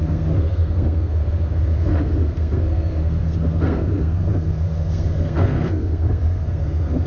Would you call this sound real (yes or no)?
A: no